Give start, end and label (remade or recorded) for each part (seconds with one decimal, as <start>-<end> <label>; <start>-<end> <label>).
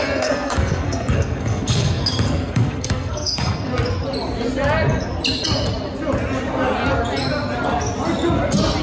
0.0-3.7 remade; 3.7-8.8 recorded